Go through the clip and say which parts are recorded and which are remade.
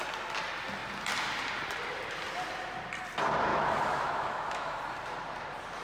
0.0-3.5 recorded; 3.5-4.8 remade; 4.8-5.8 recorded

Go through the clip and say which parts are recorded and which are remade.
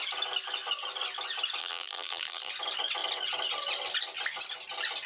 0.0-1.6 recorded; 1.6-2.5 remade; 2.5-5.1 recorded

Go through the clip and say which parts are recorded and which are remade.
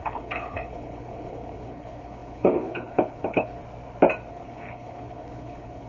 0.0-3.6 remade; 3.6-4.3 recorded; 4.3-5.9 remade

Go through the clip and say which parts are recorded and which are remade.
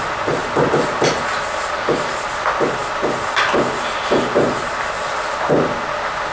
0.0-6.3 recorded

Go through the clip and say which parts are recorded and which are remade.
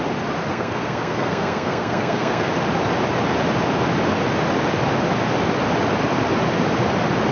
0.0-0.5 recorded; 0.5-2.5 remade; 2.5-7.3 recorded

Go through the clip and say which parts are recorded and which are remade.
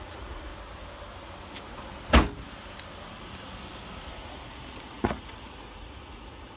0.0-0.5 remade; 0.5-4.1 recorded; 4.1-6.6 remade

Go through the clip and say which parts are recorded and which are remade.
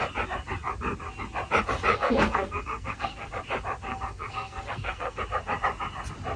0.0-1.9 recorded; 1.9-3.3 remade; 3.3-3.9 recorded; 3.9-5.2 remade; 5.2-6.4 recorded